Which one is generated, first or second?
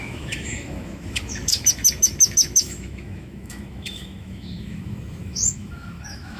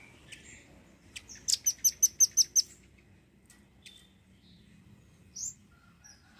first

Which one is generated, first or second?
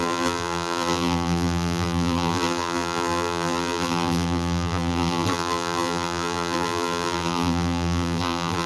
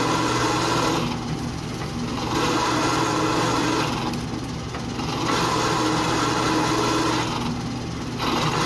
first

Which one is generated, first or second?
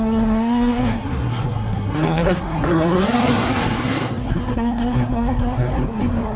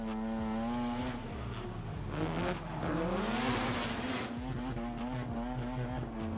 first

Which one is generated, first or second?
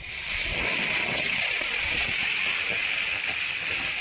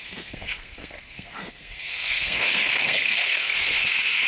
second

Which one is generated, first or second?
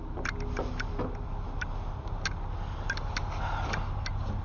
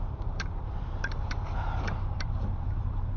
second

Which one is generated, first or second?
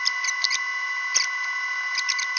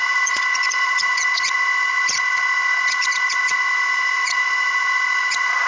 second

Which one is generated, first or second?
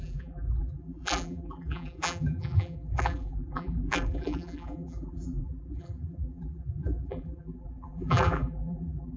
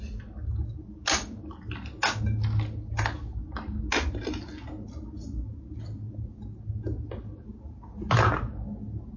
first